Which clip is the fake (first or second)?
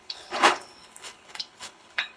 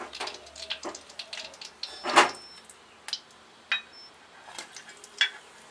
first